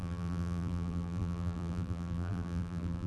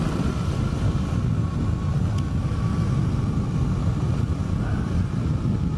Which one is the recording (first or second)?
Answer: second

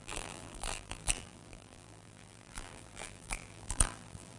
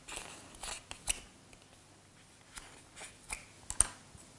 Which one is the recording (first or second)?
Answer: second